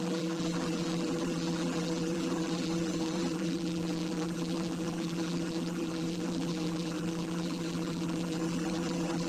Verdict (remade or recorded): remade